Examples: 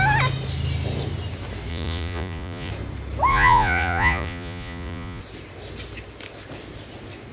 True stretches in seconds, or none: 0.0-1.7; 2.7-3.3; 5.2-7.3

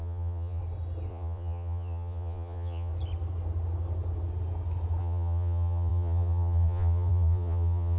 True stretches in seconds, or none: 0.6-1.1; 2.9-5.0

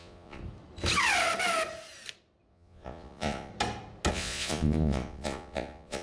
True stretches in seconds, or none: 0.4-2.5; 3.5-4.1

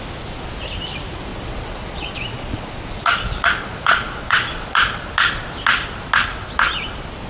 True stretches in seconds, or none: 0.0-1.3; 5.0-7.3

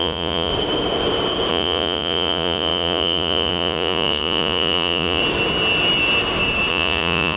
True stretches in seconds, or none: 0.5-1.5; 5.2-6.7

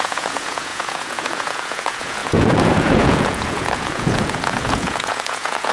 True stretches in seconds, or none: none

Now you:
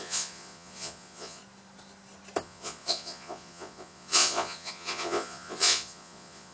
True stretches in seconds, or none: 1.4-2.4